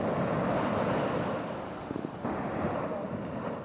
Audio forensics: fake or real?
real